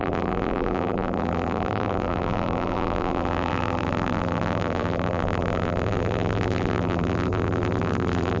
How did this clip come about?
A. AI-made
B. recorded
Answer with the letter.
A